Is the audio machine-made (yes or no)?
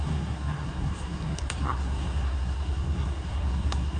yes